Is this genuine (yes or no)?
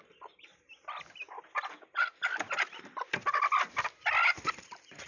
yes